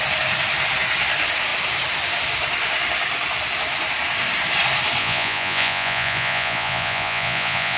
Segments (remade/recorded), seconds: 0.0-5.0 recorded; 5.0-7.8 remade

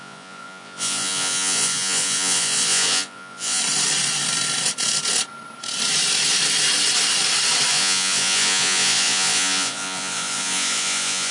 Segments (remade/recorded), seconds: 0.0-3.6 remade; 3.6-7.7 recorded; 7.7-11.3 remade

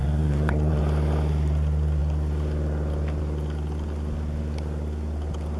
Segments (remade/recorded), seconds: 0.0-0.8 remade; 0.8-5.6 recorded

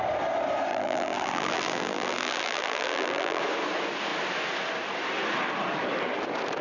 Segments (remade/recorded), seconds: 0.0-0.7 recorded; 0.7-3.4 remade; 3.4-6.6 recorded

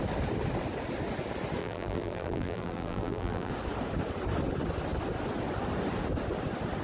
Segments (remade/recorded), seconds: 0.0-1.6 recorded; 1.6-3.5 remade; 3.5-6.8 recorded

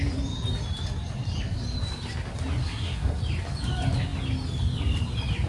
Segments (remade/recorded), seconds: 0.0-2.6 recorded; 2.6-3.2 remade; 3.2-5.5 recorded